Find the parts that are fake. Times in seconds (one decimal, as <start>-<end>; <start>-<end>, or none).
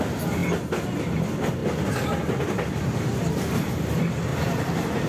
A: 4.3-5.1